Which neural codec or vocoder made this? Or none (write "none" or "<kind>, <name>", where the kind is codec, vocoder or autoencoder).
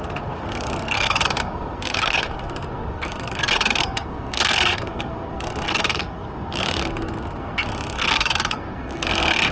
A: codec, SNAC